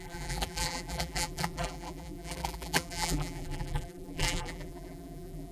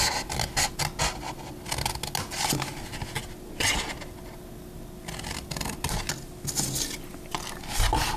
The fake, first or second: first